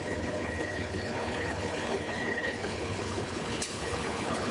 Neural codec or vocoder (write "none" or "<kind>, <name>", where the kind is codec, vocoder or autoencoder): codec, HILCodec